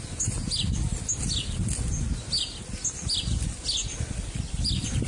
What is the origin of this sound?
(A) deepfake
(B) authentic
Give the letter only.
B